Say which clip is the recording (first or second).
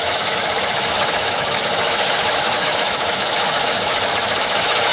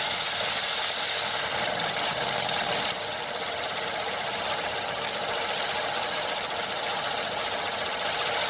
second